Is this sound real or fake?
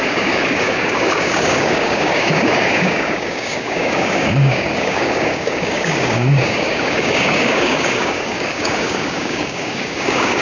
fake